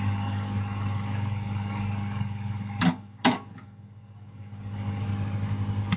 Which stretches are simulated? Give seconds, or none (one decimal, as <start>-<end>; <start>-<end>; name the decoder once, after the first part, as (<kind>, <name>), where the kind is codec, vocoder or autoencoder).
0.0-5.1 (codec, DAC)